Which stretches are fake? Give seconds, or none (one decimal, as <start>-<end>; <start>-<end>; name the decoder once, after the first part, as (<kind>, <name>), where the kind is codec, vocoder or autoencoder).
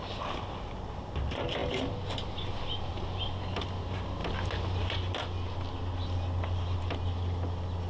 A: none